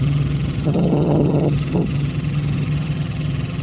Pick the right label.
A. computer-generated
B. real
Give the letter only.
A